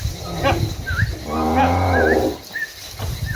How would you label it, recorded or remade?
recorded